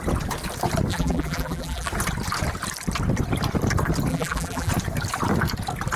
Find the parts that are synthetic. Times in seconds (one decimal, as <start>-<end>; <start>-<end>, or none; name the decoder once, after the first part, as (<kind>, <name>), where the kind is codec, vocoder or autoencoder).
0.9-1.9 (vocoder, BigVGAN v2); 4.1-4.7